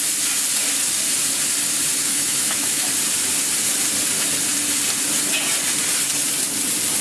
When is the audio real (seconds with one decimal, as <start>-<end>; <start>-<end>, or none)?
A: 0.0-2.0; 2.9-7.0